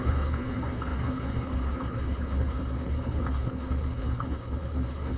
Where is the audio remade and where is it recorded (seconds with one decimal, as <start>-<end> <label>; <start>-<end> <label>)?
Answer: 0.0-5.2 remade